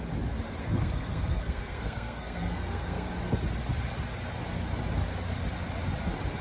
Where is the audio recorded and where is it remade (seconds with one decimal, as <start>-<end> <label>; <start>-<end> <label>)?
0.0-0.6 recorded; 0.6-3.1 remade; 3.1-6.4 recorded